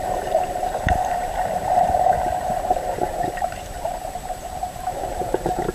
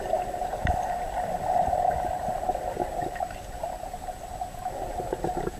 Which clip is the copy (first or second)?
first